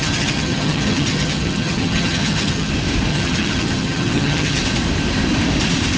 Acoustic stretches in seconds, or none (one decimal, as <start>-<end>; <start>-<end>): 2.7-3.1; 4.6-6.0